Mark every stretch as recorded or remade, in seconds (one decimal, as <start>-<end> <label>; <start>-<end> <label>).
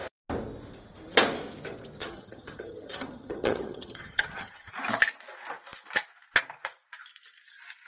0.0-2.0 recorded; 2.0-4.7 remade; 4.7-7.9 recorded